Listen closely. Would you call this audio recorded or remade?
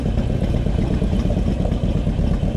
recorded